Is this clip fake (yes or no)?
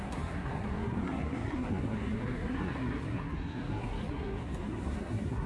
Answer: yes